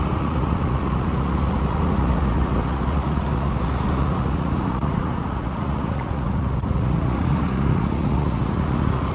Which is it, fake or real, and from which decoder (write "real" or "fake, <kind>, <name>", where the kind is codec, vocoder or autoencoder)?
fake, vocoder, Vocos